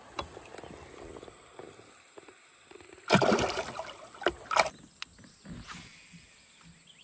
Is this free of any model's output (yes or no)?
yes